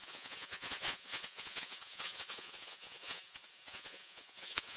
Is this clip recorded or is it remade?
remade